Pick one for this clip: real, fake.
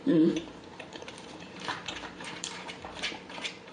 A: fake